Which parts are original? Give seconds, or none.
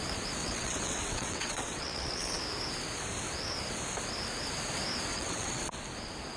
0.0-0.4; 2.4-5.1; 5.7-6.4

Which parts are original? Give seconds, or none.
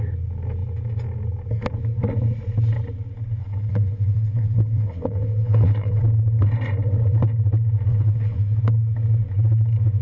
0.0-3.4; 6.0-7.9; 8.6-10.0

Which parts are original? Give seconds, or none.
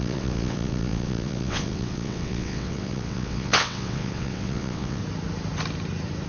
5.0-6.3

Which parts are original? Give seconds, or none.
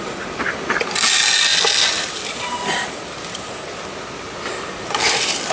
0.0-5.5